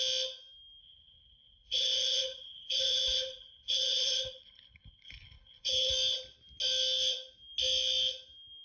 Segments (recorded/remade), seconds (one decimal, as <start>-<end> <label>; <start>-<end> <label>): 0.0-0.8 recorded; 0.8-5.9 remade; 5.9-8.6 recorded